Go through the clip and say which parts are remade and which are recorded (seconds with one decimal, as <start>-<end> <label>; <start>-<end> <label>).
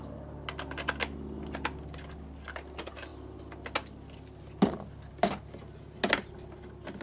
0.0-7.0 recorded